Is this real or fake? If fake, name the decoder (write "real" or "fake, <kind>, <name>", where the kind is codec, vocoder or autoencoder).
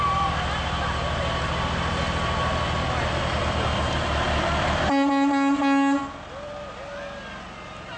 real